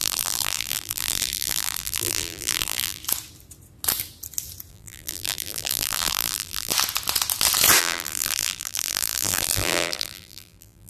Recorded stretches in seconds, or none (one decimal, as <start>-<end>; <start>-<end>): 3.0-4.7; 6.7-7.8